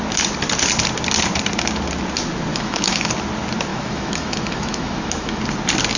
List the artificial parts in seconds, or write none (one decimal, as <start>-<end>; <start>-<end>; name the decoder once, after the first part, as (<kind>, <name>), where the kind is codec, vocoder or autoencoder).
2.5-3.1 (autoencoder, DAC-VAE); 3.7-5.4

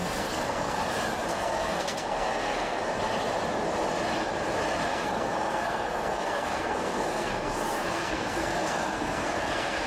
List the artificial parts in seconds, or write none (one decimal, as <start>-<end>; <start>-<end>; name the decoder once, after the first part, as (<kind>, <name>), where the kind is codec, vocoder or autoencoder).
0.0-0.8 (codec, SNAC); 1.3-3.0; 4.9-9.9

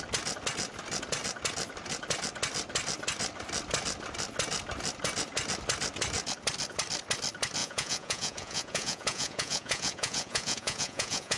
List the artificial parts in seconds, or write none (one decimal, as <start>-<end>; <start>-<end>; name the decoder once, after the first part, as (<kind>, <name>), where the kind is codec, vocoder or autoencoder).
7.6-11.4 (vocoder, Vocos)

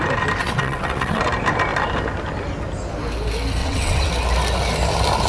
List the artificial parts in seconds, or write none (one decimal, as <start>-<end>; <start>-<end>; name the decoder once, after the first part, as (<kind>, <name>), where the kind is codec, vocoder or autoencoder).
0.4-1.2 (vocoder, WaveNeXt); 3.6-4.1

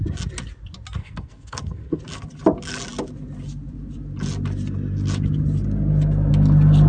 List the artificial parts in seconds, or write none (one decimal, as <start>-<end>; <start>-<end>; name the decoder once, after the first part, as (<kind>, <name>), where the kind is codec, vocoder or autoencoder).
1.0-2.0 (codec, SNAC)

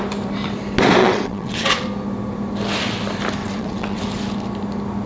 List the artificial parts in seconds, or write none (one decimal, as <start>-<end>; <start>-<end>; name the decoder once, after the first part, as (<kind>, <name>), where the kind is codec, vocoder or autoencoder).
1.0-1.8 (vocoder, WaveNeXt); 3.4-4.0

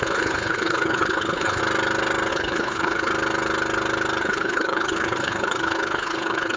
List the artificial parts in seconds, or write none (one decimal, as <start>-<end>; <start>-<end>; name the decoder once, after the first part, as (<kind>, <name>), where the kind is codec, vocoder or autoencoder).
0.0-1.6 (codec, HILCodec); 2.3-3.1; 4.2-6.6